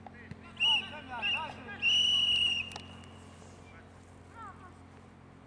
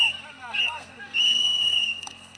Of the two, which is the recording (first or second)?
first